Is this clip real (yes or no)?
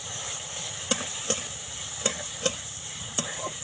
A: no